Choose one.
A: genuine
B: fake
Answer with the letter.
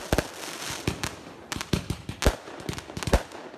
A